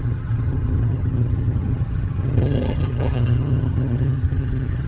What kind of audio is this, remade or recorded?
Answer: remade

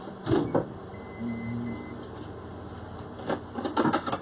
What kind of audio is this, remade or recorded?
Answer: recorded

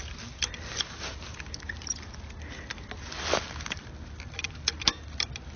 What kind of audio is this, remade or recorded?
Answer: recorded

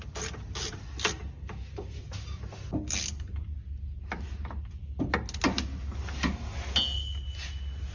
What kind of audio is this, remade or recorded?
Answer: recorded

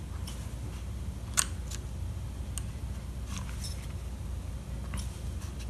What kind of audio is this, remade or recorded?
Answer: recorded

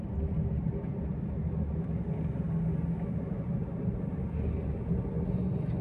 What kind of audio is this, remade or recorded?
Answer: recorded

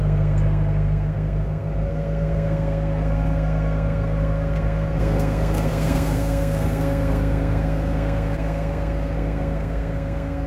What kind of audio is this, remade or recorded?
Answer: remade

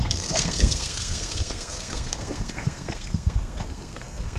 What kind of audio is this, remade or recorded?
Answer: remade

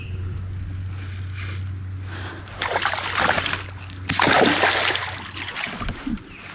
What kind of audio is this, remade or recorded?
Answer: recorded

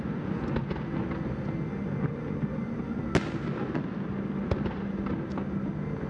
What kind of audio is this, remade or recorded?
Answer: recorded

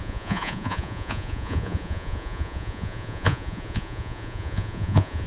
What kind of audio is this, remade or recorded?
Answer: remade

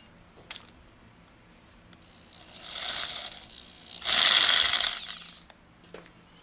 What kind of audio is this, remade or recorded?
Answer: recorded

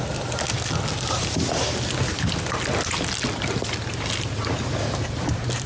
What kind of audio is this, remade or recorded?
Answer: recorded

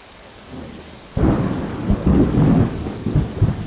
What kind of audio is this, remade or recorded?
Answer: remade